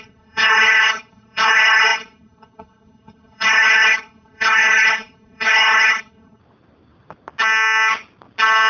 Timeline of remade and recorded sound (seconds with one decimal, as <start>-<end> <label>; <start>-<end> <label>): 0.0-6.4 remade; 6.4-8.7 recorded